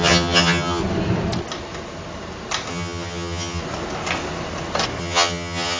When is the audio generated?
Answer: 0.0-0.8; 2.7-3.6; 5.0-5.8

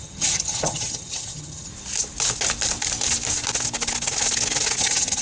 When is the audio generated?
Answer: 0.0-1.7; 4.8-5.2

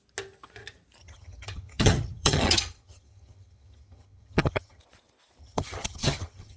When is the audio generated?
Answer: 1.0-4.8; 5.4-6.6

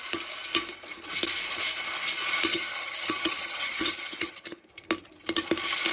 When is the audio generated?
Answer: 2.5-4.7